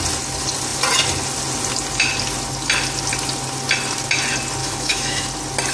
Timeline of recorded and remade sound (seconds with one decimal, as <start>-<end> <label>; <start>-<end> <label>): 0.0-4.6 recorded; 4.6-5.3 remade; 5.3-5.7 recorded